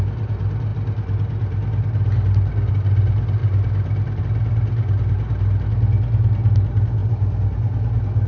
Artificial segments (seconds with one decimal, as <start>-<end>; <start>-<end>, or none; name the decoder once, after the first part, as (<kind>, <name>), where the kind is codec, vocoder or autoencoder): none